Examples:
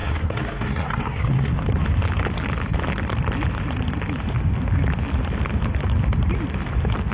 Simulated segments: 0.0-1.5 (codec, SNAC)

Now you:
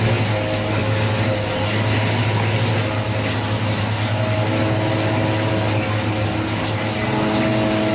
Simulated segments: none

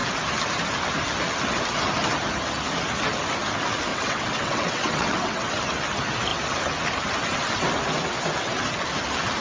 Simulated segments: 3.9-5.5 (vocoder, WaveNeXt)

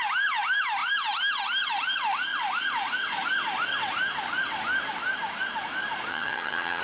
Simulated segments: 6.1-6.8 (vocoder, HiFi-GAN)

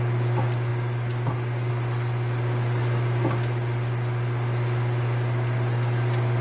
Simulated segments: none

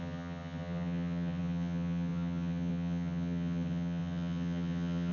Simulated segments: 0.0-5.1 (vocoder, HiFi-GAN)

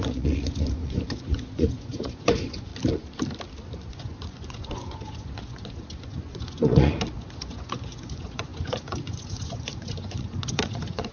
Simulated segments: 0.0-2.7 (vocoder, Vocos); 3.9-11.1

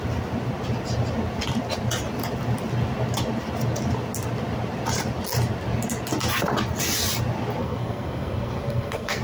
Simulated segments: 7.6-9.2 (codec, SNAC)